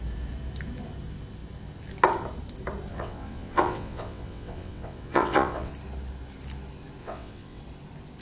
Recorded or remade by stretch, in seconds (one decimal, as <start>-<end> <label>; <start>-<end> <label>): 0.0-2.9 recorded; 2.9-5.7 remade; 5.7-7.0 recorded; 7.0-7.6 remade; 7.6-8.2 recorded